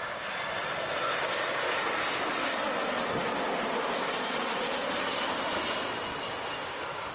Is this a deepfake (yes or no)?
no